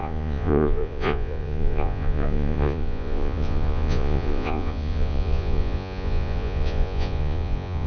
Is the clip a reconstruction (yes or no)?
yes